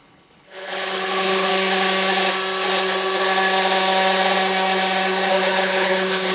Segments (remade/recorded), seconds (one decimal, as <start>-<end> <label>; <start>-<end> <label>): 0.0-1.5 remade; 1.5-5.3 recorded; 5.3-6.3 remade